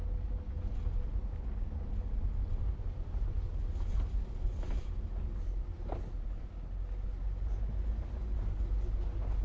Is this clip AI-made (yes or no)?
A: no